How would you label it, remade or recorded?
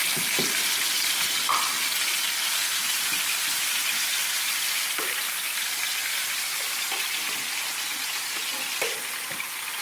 recorded